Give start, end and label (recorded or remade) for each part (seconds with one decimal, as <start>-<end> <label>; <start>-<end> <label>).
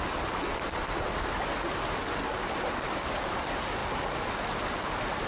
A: 0.0-5.3 recorded